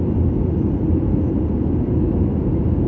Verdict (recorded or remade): recorded